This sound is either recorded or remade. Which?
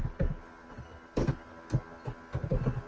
recorded